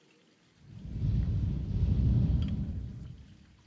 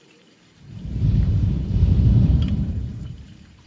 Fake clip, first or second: second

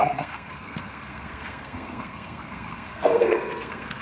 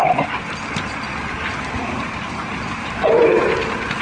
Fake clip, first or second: first